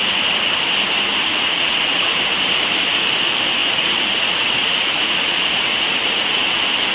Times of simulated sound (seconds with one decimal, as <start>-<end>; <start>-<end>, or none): 1.3-2.2; 3.6-6.3